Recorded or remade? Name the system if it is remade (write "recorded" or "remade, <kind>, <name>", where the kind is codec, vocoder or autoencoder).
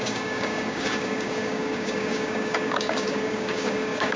remade, codec, DAC